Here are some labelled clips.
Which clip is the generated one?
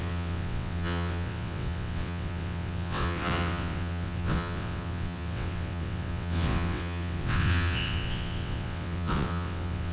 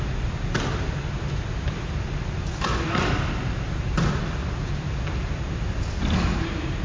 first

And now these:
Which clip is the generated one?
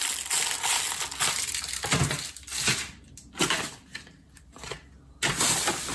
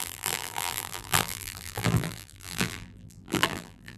second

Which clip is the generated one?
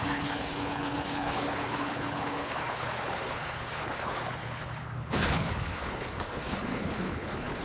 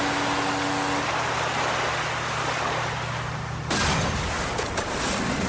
first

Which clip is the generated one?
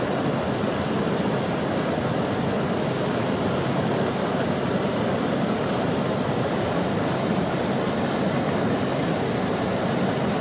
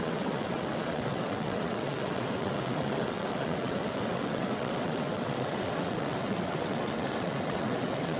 second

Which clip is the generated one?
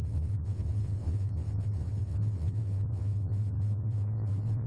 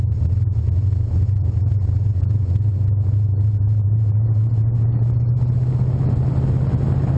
first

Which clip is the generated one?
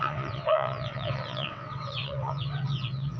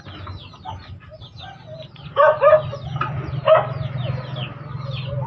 first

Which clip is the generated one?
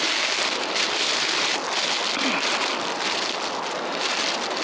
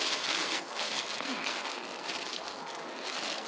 second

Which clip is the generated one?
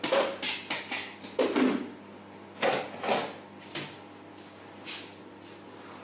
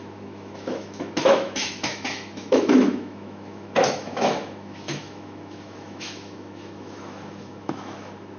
second